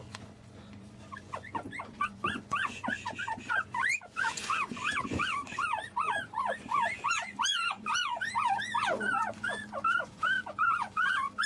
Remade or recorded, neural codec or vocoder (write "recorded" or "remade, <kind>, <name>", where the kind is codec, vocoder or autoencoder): remade, vocoder, Vocos